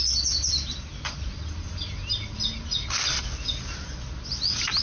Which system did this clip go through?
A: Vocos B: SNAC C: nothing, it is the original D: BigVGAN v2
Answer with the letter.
C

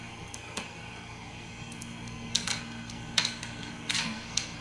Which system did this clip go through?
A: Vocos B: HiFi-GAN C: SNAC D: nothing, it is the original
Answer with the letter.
C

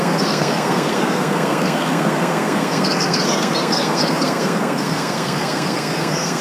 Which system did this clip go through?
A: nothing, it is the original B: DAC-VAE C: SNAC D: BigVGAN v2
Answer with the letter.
C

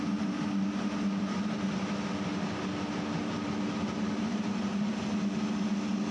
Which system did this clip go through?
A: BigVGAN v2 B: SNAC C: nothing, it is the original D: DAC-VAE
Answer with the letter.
C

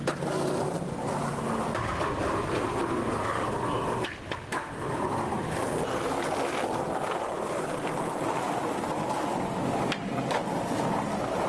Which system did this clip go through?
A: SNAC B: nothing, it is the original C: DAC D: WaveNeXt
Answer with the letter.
B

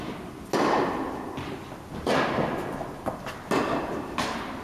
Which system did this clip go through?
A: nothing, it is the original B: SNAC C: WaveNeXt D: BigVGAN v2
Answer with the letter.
A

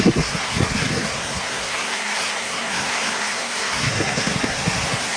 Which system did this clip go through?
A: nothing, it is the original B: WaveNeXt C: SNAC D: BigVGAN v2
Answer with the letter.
C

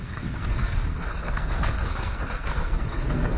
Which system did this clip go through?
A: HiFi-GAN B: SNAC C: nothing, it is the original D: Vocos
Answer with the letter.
B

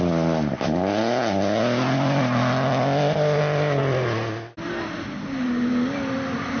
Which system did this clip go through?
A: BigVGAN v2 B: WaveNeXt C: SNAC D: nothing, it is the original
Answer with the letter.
D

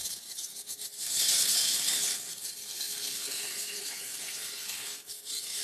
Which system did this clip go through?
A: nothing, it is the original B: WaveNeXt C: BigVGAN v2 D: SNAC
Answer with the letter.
D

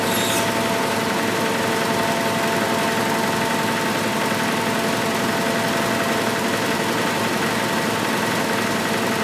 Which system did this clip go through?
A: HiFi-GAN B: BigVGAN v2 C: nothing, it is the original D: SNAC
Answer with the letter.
C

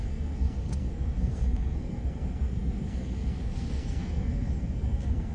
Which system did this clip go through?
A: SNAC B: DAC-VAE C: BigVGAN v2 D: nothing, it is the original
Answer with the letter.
A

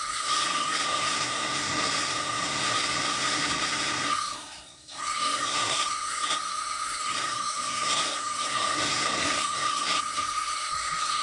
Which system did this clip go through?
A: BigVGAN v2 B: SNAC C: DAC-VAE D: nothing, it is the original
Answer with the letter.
B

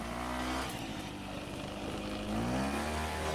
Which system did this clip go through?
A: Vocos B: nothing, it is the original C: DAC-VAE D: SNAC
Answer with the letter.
B